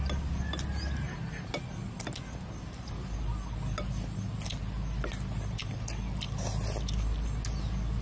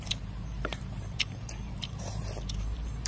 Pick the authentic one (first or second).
first